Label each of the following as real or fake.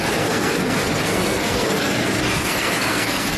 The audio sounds fake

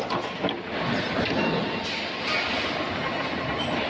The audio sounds real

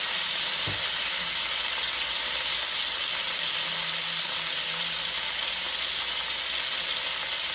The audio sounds real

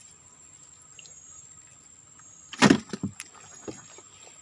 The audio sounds real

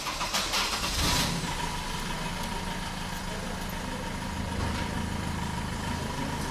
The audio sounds real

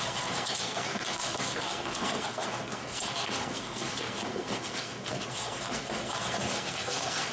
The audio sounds fake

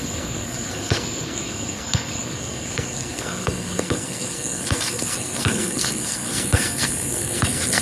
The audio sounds fake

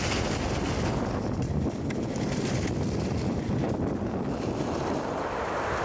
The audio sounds real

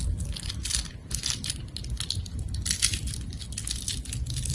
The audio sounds real